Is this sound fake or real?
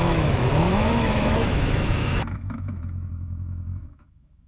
fake